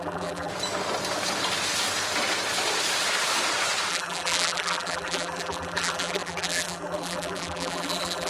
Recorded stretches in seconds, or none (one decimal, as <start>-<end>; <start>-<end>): 0.5-3.9